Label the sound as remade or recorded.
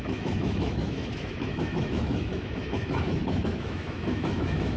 remade